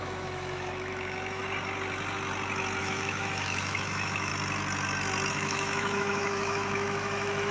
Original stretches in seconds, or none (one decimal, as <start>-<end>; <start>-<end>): 1.4-2.8; 4.3-5.3